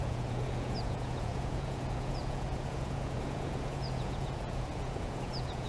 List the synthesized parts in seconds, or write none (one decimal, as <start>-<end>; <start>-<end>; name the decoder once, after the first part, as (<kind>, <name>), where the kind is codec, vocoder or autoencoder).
0.0-5.7 (vocoder, Vocos)